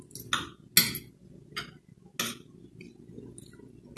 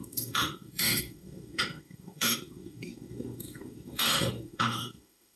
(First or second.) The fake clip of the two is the second